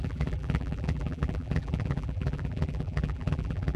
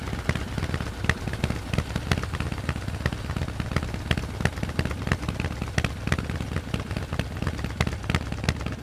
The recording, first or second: second